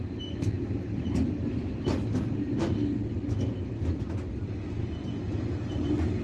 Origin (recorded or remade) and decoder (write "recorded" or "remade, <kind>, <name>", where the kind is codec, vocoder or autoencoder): recorded